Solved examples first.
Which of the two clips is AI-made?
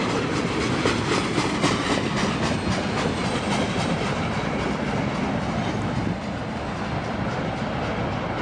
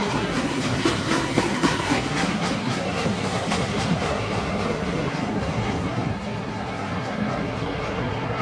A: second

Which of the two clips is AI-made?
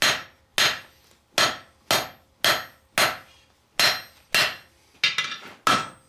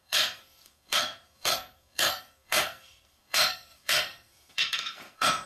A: second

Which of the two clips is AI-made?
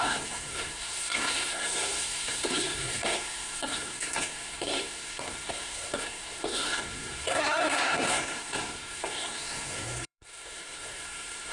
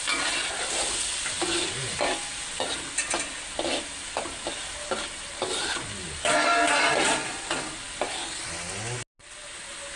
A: first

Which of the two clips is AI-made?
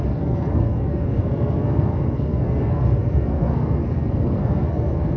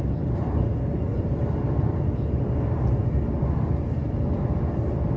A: first